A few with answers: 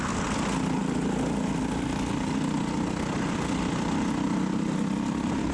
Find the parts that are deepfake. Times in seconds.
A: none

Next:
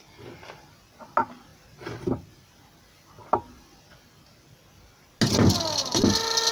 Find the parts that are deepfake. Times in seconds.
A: 3.2-3.7 (vocoder, BigVGAN v2)

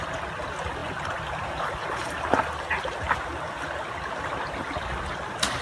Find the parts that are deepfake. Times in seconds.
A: none

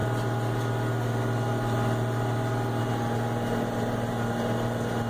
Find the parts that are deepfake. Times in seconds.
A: none

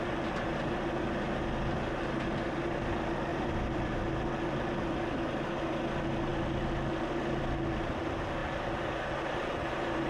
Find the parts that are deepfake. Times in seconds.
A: 3.3-4.1 (vocoder, BigVGAN v2)